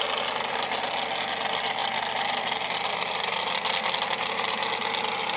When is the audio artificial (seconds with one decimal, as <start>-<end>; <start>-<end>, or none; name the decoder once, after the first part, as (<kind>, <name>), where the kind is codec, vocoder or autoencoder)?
none